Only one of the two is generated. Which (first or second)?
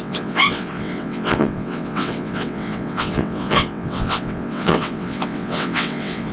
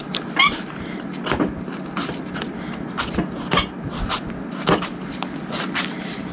first